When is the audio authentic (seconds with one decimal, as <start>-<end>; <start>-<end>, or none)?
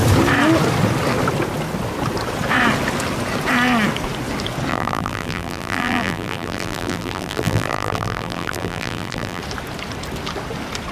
0.0-4.7; 9.4-10.9